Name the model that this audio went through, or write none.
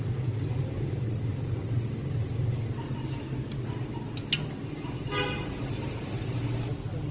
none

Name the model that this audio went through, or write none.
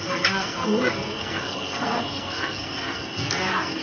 codec, SNAC